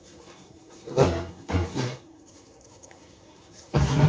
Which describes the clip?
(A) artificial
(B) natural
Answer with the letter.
A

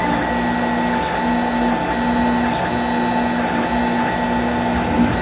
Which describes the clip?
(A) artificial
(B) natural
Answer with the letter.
B